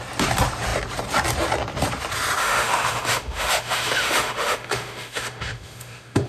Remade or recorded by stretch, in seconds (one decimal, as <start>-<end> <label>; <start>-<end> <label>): 0.0-2.4 recorded; 2.4-6.3 remade